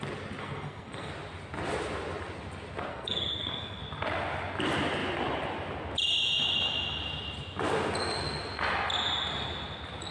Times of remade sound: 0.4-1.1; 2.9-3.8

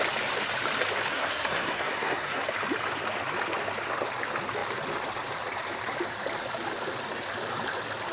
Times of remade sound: 1.1-2.4